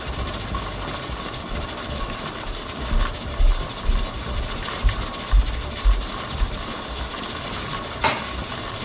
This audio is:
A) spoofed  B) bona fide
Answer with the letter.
B